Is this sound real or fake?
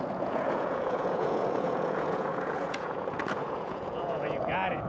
fake